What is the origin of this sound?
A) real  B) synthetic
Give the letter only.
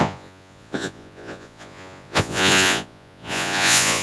B